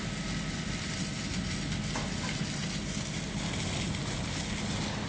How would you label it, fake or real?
real